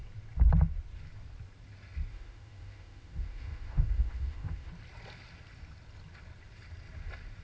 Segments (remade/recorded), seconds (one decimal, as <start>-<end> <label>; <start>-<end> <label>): 0.0-2.1 recorded; 2.1-4.7 remade; 4.7-7.4 recorded